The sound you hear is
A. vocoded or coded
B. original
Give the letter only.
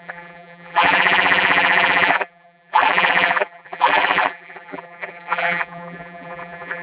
A